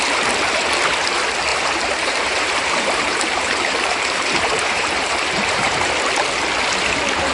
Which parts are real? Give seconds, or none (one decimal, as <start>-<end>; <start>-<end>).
0.0-1.5; 5.9-7.3

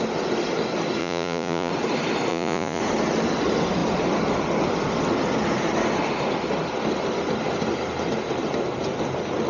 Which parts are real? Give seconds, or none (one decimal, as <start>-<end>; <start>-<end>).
0.0-1.0; 1.7-2.3; 2.8-9.5

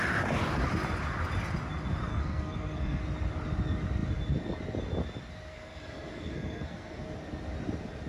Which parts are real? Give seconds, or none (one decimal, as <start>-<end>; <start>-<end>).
0.0-2.1; 3.0-5.5; 7.1-8.1

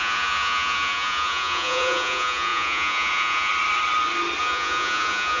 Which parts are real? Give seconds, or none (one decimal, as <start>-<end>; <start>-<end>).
3.5-4.4

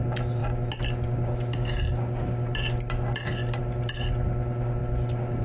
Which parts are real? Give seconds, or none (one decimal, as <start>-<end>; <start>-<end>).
0.0-5.4

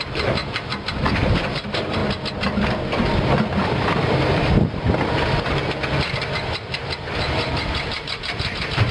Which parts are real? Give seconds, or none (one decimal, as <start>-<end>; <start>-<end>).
2.0-6.1

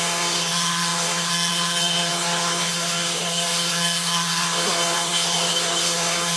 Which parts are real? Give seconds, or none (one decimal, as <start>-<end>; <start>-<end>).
none

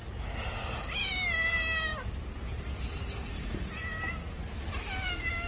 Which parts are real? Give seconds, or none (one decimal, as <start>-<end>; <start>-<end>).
0.0-5.5